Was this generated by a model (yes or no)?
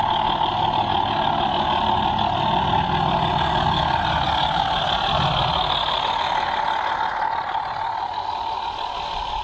no